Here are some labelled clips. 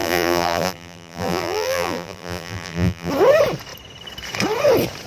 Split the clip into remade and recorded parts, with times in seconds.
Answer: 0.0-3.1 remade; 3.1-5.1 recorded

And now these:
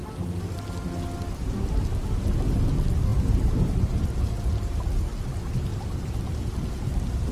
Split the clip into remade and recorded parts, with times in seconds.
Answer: 0.0-0.5 remade; 0.5-3.1 recorded; 3.1-4.4 remade; 4.4-5.7 recorded; 5.7-6.7 remade; 6.7-7.3 recorded

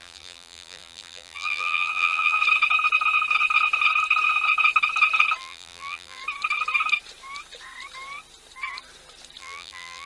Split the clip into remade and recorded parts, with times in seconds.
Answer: 0.0-2.4 remade; 2.4-5.4 recorded; 5.4-6.2 remade; 6.2-9.4 recorded; 9.4-10.1 remade

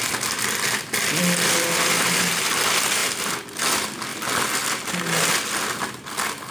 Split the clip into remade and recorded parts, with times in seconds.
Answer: 0.0-6.5 recorded

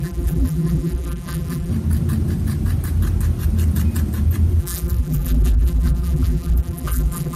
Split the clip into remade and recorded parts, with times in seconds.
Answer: 0.0-1.7 remade; 1.7-4.6 recorded; 4.6-7.4 remade